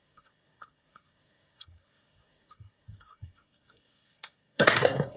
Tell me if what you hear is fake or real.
fake